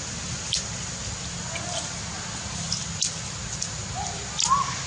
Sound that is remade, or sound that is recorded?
recorded